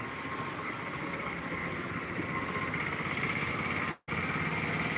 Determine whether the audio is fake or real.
real